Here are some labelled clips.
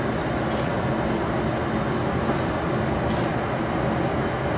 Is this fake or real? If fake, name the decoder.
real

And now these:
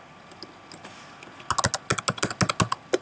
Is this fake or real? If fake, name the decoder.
real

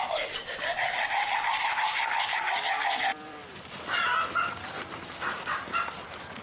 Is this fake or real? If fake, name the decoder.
fake, vocoder, BigVGAN v2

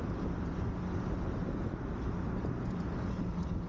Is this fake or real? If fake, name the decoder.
real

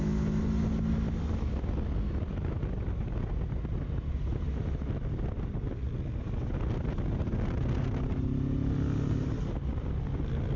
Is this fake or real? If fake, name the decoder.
real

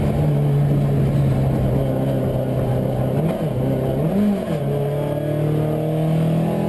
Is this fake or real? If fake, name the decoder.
real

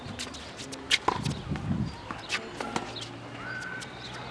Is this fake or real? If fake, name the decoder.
real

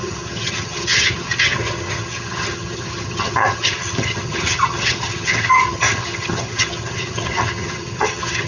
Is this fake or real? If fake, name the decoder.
fake, vocoder, HiFi-GAN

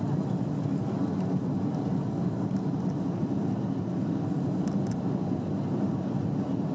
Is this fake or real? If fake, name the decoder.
real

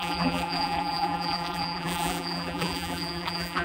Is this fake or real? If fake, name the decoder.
fake, vocoder, BigVGAN v2